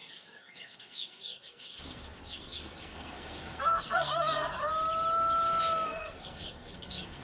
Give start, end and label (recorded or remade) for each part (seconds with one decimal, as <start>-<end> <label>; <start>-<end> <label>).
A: 0.0-4.6 remade; 4.6-5.6 recorded; 5.6-7.2 remade